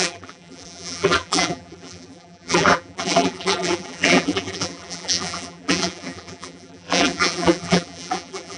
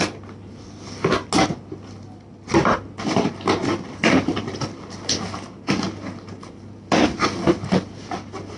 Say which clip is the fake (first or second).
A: first